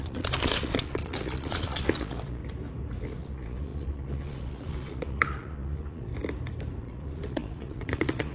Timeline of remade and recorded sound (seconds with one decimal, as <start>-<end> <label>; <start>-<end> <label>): 0.0-2.4 remade; 2.4-3.2 recorded; 3.2-6.1 remade; 6.1-6.8 recorded; 6.8-8.3 remade